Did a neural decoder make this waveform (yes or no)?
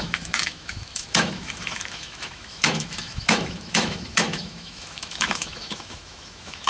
yes